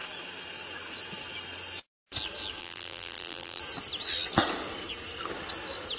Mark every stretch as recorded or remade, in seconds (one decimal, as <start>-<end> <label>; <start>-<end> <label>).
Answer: 0.0-2.6 recorded; 2.6-3.6 remade; 3.6-6.0 recorded